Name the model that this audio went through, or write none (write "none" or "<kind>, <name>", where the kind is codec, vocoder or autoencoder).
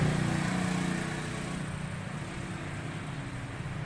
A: none